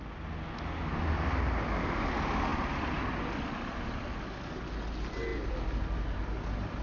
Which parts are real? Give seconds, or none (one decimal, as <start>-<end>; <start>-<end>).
0.0-6.8